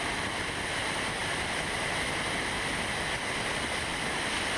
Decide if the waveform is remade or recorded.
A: recorded